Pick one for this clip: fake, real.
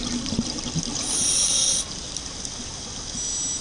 real